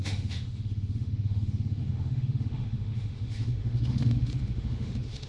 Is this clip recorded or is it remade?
remade